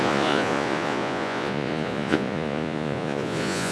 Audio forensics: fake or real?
fake